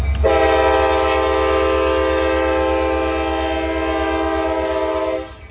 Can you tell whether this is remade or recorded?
recorded